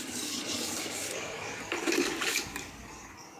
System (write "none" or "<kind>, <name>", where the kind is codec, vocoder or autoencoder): codec, DAC